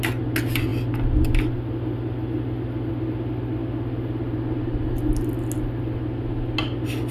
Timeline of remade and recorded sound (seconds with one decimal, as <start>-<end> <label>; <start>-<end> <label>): 0.0-7.1 recorded